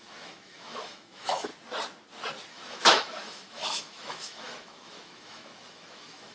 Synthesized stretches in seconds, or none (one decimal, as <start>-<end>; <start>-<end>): 0.0-1.5; 2.5-6.3